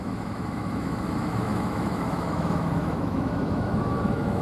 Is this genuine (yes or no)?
no